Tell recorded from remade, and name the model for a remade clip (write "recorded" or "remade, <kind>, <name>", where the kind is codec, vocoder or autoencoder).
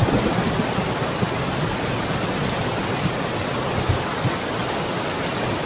recorded